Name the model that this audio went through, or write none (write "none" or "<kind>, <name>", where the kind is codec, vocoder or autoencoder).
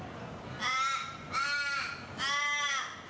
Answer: none